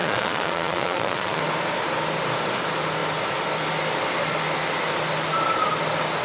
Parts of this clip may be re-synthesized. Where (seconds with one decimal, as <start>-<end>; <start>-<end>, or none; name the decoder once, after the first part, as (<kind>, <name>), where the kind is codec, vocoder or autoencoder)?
0.0-1.4 (vocoder, Vocos)